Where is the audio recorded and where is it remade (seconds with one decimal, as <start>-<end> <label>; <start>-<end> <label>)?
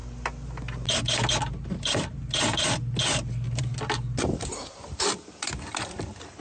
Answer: 0.0-6.4 recorded